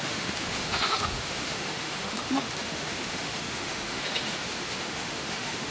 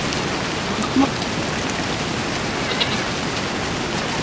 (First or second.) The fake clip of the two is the first